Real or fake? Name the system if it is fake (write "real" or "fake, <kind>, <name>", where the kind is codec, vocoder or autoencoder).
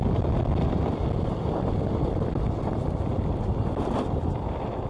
real